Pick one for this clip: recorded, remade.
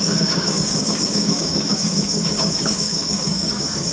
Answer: remade